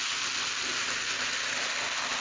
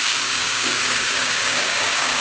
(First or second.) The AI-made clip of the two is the second